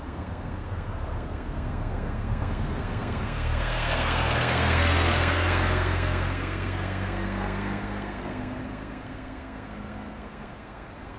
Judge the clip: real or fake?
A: fake